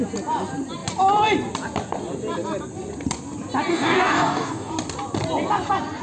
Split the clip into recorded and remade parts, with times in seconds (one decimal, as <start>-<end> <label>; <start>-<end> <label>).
0.0-3.7 recorded; 3.7-4.7 remade; 4.7-6.0 recorded